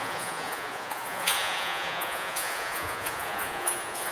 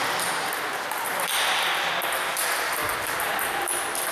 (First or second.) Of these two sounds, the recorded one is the second